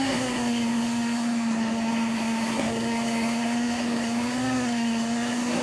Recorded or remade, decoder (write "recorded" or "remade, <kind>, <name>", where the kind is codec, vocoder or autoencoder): remade, codec, SNAC